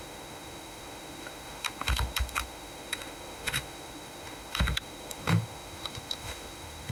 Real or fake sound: fake